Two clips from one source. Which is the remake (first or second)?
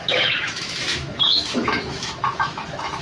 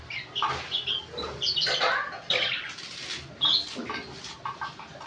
first